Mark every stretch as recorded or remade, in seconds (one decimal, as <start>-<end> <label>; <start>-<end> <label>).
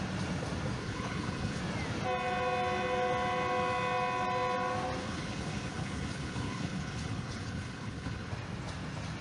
0.0-0.8 recorded; 0.8-1.6 remade; 1.6-5.0 recorded; 5.0-8.3 remade; 8.3-9.2 recorded